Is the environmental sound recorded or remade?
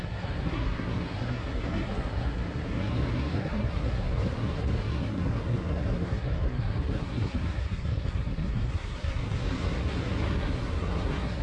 remade